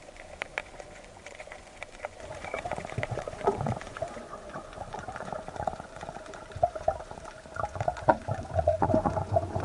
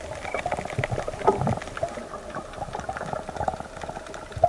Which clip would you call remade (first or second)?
first